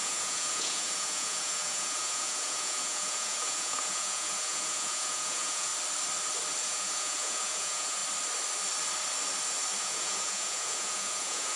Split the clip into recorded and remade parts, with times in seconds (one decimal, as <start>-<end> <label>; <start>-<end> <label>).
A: 0.0-5.7 remade; 5.7-6.6 recorded; 6.6-8.0 remade; 8.0-9.8 recorded; 9.8-11.6 remade